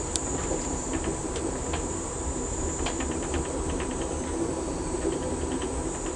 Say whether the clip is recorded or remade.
remade